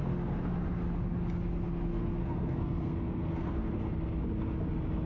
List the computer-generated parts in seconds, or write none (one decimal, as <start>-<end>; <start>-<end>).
1.9-3.9